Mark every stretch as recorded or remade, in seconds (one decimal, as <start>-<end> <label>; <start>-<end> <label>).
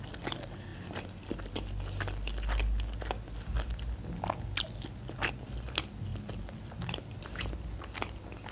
0.0-8.5 recorded